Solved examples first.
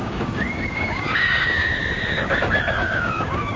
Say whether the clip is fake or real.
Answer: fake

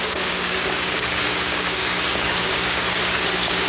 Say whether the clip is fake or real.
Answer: fake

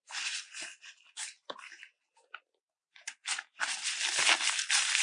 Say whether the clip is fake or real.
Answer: real